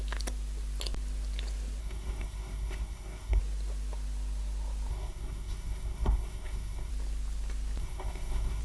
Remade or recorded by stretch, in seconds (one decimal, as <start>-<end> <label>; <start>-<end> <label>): 0.0-1.8 recorded; 1.8-3.4 remade; 3.4-4.9 recorded; 4.9-6.9 remade; 6.9-7.8 recorded; 7.8-8.6 remade